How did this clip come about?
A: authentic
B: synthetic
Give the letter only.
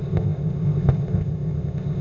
B